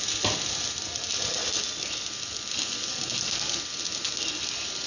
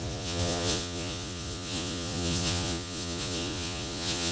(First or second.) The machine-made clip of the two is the second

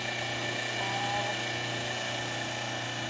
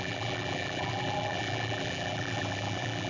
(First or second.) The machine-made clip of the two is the second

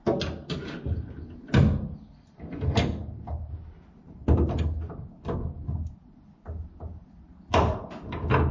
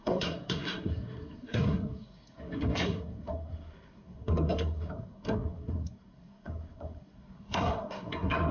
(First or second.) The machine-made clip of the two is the second